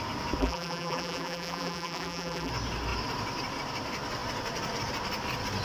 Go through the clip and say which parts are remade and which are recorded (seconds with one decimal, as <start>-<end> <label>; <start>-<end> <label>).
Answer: 0.0-0.4 recorded; 0.4-2.5 remade; 2.5-5.6 recorded